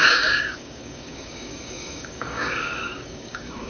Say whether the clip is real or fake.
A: fake